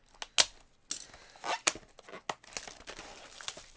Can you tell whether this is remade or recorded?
recorded